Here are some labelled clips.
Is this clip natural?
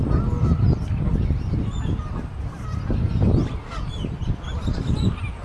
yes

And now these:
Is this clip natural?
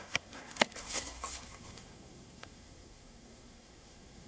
no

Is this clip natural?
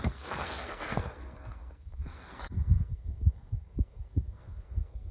no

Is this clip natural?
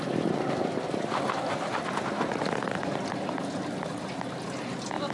yes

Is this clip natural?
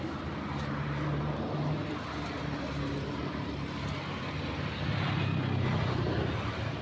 yes